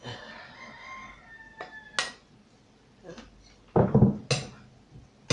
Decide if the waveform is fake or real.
real